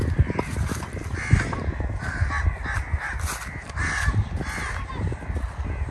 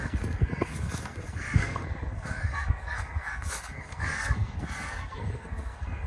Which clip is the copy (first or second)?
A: second